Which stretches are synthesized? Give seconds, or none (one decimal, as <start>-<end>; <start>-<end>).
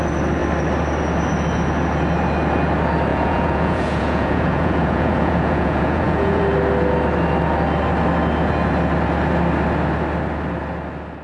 3.1-6.4